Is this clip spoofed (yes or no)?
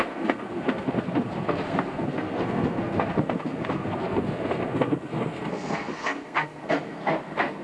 yes